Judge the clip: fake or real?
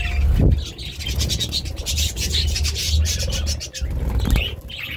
real